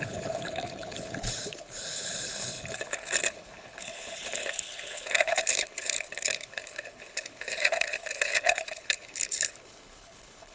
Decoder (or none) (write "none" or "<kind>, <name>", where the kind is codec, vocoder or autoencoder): codec, HILCodec